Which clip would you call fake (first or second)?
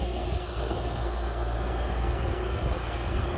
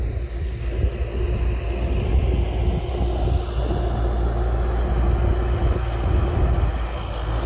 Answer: first